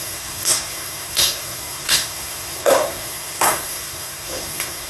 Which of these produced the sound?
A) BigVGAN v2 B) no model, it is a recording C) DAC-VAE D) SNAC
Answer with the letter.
D